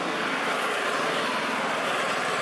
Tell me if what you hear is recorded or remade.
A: recorded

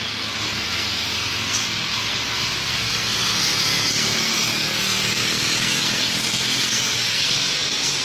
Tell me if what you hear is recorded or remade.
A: remade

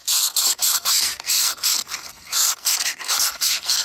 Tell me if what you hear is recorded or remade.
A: remade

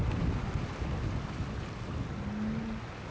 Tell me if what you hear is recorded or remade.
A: recorded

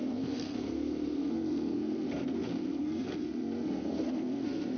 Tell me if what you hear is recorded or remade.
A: remade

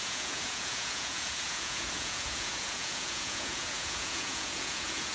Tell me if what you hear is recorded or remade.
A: remade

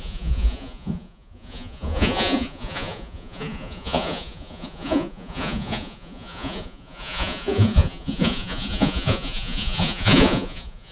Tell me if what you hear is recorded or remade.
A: remade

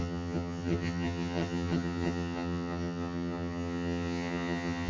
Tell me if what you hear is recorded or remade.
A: remade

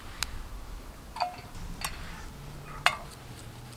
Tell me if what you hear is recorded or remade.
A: recorded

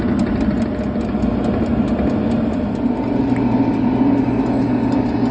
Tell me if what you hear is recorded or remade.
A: recorded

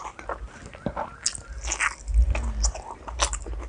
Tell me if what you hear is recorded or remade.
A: recorded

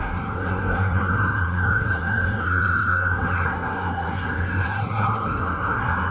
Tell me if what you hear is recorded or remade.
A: remade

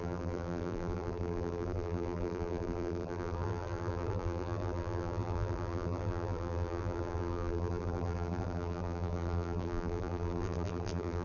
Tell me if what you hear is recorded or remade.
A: remade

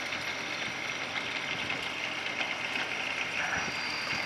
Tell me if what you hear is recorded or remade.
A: recorded